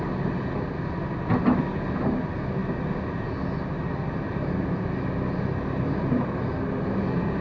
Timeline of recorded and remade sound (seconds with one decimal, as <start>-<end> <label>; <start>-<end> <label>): 0.0-7.4 recorded